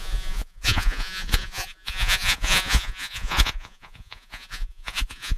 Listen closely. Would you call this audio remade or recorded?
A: remade